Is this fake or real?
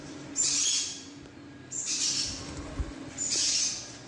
real